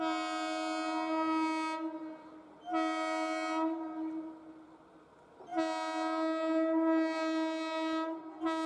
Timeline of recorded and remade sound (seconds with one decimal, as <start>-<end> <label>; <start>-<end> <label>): 0.0-8.7 recorded